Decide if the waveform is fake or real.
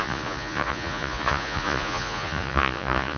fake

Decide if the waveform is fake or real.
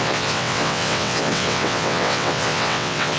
fake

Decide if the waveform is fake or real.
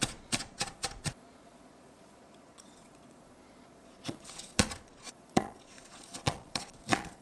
fake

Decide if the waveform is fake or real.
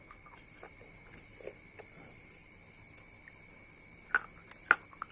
real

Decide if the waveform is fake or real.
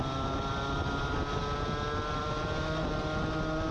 real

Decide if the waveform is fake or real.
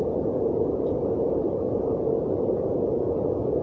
fake